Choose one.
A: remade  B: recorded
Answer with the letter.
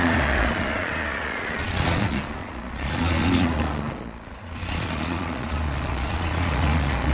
A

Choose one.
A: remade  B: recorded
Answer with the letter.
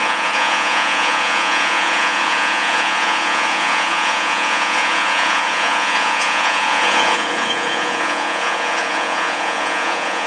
A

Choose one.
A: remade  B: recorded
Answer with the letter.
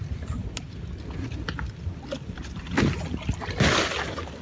B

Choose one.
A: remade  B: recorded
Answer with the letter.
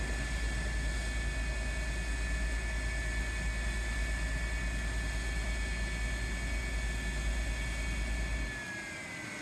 B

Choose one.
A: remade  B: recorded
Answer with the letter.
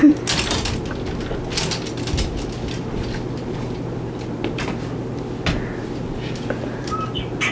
B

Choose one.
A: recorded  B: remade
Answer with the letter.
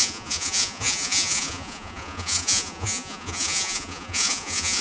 B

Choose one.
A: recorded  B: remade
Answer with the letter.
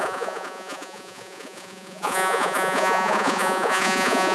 B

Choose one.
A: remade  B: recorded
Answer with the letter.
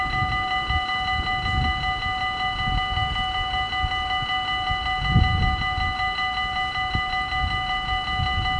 B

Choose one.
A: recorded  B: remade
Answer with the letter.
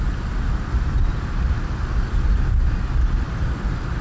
A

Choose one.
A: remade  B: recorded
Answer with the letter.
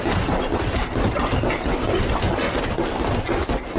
B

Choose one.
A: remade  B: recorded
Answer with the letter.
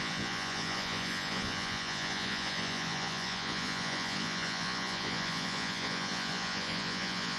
A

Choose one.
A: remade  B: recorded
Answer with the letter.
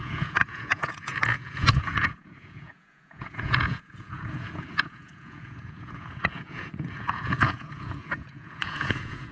A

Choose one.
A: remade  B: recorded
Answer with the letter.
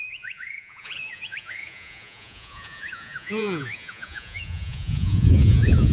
A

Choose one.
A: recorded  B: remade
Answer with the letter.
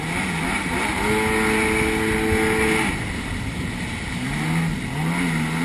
A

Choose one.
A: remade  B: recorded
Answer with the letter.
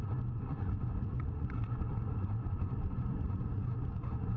A